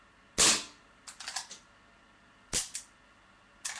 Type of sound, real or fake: real